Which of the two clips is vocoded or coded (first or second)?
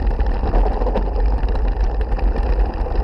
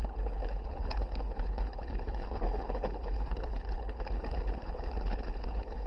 second